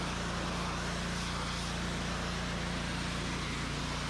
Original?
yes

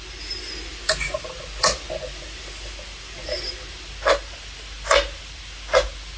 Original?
yes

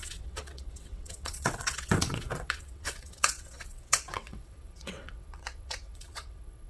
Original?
no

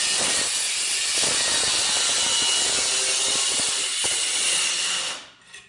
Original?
yes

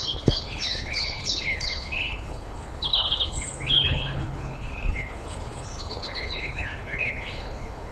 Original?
no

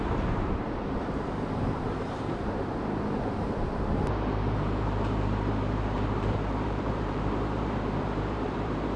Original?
no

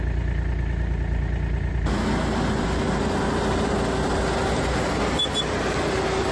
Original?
yes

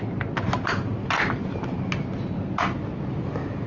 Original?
yes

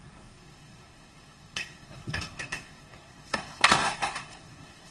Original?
no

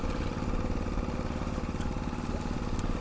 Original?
yes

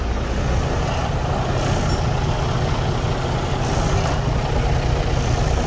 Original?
yes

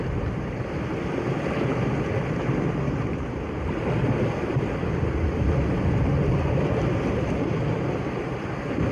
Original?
yes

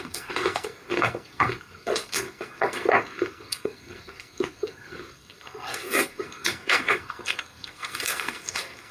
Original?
no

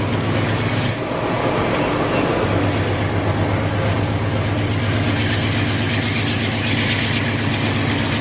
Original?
yes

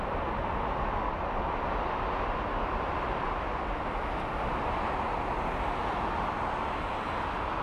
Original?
yes